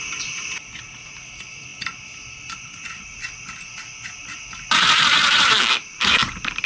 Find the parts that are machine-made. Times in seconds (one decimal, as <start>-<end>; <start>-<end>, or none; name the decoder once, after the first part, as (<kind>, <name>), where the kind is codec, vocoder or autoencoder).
none